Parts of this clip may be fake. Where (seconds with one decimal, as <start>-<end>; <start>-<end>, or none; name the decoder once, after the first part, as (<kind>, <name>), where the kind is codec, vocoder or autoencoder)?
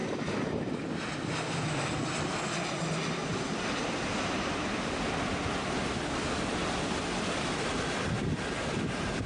0.0-0.7 (vocoder, BigVGAN v2)